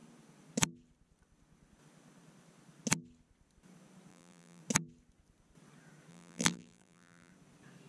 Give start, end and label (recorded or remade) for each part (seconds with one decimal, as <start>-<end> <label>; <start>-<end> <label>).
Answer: 0.0-4.1 recorded; 4.1-4.6 remade; 4.6-6.1 recorded; 6.1-7.3 remade; 7.3-7.9 recorded